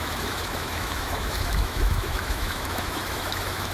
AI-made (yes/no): yes